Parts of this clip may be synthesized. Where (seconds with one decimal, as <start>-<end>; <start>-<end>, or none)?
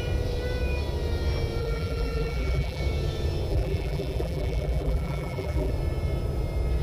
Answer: 1.6-2.8; 3.5-5.7